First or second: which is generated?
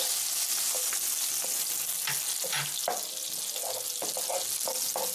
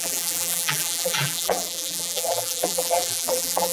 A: second